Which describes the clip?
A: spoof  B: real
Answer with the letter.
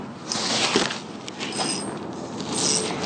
B